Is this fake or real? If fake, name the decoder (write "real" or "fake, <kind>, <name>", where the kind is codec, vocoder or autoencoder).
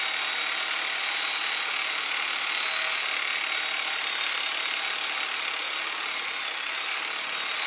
real